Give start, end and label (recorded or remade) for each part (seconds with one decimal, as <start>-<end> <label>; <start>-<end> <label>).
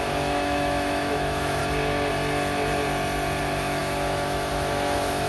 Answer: 0.0-1.6 remade; 1.6-3.4 recorded; 3.4-5.3 remade